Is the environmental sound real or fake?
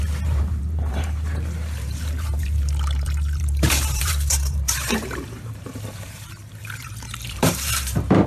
fake